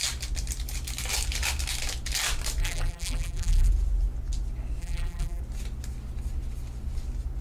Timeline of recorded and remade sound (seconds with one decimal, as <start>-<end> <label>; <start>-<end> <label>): 0.0-2.6 recorded; 2.6-3.7 remade; 3.7-4.8 recorded; 4.8-5.4 remade; 5.4-7.4 recorded

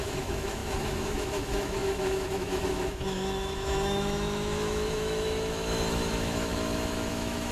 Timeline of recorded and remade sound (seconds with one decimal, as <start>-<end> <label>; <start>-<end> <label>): 0.0-7.5 remade

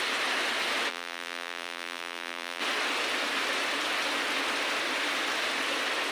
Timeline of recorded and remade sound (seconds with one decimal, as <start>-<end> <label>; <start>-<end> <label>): 0.0-0.9 recorded; 0.9-2.6 remade; 2.6-6.1 recorded

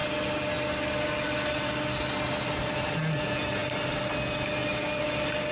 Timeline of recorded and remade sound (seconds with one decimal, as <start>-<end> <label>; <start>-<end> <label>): 0.0-5.5 recorded

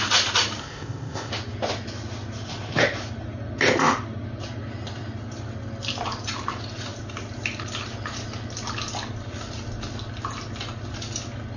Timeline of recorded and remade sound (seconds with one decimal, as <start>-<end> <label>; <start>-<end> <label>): 0.0-0.6 recorded; 0.6-1.3 remade; 1.3-11.6 recorded